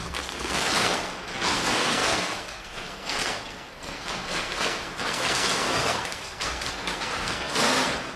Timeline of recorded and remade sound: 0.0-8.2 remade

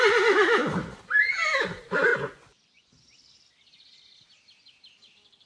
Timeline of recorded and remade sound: 0.0-2.1 recorded; 2.1-2.9 remade; 2.9-5.5 recorded

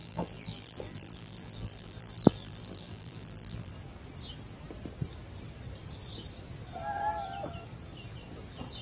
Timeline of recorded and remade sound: 0.0-3.7 remade; 3.7-8.8 recorded

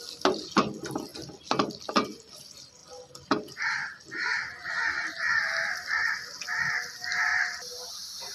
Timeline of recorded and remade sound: 0.0-7.3 recorded; 7.3-7.9 remade; 7.9-8.3 recorded